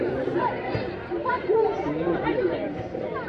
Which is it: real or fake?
fake